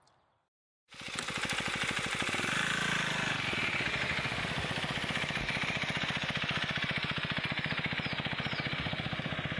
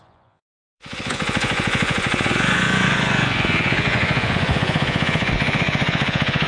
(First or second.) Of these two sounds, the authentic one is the first